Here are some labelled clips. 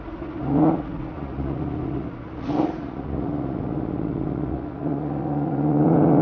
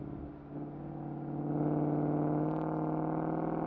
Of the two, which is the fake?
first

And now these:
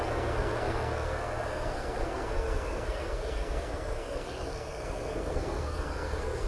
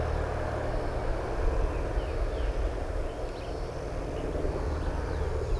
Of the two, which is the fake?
first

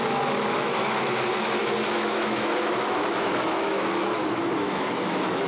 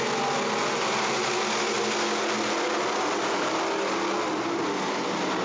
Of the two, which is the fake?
first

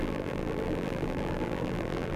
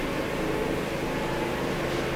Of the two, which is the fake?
first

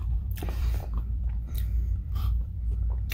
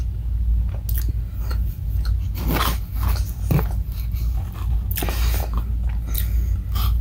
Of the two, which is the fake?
first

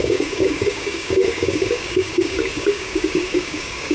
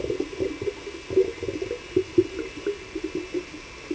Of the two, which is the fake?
first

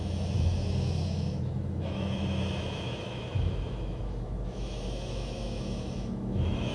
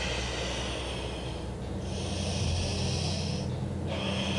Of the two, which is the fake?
first